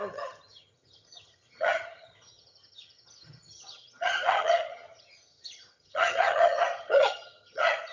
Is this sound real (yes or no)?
no